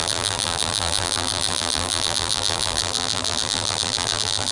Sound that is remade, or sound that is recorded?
remade